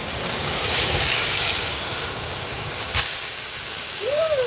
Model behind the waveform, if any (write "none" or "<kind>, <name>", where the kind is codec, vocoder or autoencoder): codec, DAC